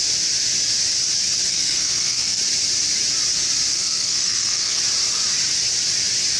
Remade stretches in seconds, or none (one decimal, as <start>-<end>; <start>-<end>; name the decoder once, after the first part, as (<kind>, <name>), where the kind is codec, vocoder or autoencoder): 1.5-2.4 (codec, SNAC); 3.7-4.8